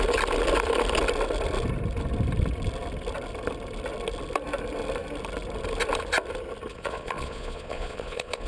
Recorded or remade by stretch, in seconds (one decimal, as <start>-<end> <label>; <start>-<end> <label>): 0.0-6.7 recorded; 6.7-8.5 remade